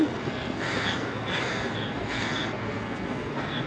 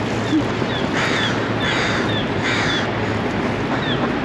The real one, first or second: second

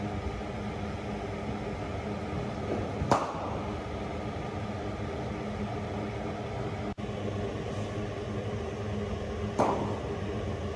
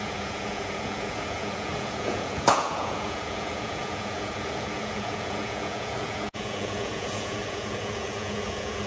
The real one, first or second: first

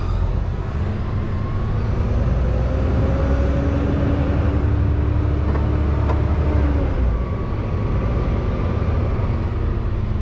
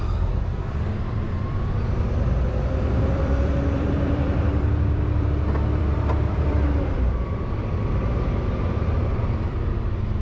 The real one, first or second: first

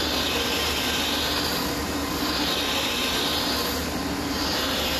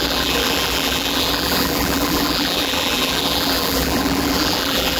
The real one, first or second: first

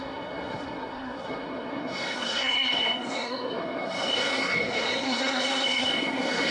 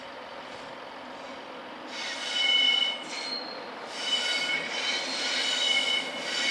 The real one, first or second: second